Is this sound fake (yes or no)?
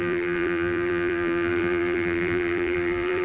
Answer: yes